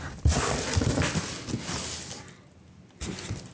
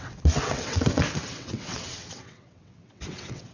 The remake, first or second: second